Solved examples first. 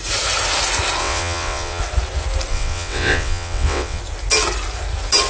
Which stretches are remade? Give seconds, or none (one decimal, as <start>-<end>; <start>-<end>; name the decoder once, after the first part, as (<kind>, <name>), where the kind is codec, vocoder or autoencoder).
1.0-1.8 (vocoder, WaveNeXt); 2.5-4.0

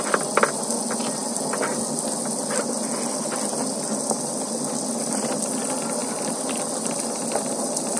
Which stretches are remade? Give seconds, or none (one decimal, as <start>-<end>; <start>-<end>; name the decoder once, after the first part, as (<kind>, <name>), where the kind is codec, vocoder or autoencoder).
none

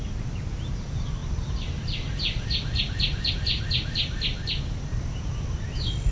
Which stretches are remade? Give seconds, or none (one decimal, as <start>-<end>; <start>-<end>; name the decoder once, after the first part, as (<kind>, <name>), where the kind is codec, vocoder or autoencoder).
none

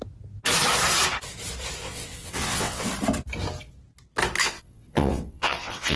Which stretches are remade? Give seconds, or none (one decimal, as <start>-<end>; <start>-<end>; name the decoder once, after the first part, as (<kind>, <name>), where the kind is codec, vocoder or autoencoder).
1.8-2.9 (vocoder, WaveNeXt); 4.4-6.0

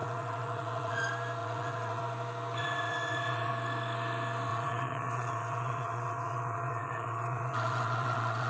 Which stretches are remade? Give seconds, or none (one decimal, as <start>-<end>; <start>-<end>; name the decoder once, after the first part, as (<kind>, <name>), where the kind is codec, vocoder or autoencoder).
0.0-1.0 (vocoder, WaveNeXt); 1.4-2.0; 2.6-3.5; 4.5-8.5

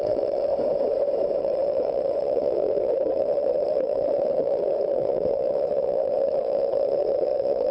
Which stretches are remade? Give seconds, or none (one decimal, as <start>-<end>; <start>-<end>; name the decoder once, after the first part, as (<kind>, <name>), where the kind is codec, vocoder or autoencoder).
0.0-0.5 (vocoder, WaveNeXt); 1.4-7.7

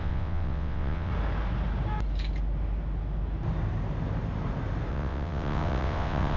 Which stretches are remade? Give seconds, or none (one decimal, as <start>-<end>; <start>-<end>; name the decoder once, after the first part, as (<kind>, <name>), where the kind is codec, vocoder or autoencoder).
0.0-1.1 (vocoder, WaveNeXt); 4.9-6.4